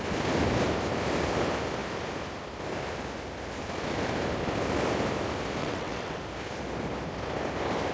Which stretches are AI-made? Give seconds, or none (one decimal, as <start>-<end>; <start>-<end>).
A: 5.6-6.2

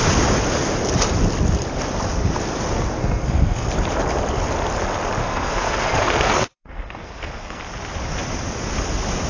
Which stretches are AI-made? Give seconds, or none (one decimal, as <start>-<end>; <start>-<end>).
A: 3.0-3.7; 5.2-7.6

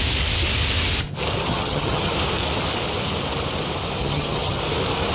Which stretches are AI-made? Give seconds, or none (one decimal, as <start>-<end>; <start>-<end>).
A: 1.5-2.1; 4.0-4.6

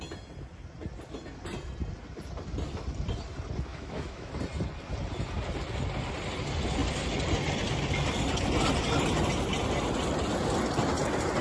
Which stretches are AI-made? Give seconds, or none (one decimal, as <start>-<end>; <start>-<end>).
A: 3.7-4.3

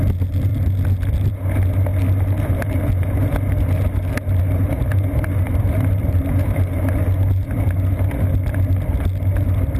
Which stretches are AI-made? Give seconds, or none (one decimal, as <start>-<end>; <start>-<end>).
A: 4.9-7.0

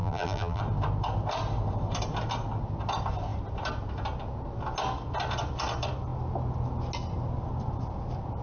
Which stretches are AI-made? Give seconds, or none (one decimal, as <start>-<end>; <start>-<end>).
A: 0.0-0.6

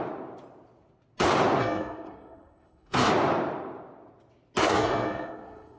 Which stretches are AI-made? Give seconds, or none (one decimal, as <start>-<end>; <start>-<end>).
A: 1.6-3.1; 4.6-5.8